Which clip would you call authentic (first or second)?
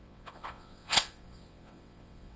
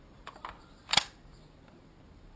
second